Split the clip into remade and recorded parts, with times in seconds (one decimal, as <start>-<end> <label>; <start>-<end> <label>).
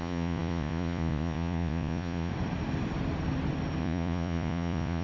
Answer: 0.0-2.3 remade; 2.3-3.8 recorded; 3.8-5.0 remade